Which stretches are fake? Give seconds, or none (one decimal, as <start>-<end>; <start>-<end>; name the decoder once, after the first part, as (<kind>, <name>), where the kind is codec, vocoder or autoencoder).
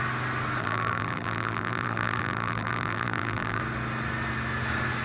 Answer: 0.6-3.6 (vocoder, BigVGAN v2)